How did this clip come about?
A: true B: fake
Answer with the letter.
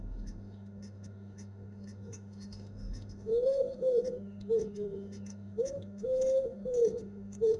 B